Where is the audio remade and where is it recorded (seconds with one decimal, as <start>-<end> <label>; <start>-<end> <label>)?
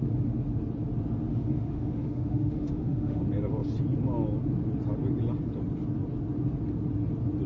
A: 0.0-1.3 recorded; 1.3-3.2 remade; 3.2-7.5 recorded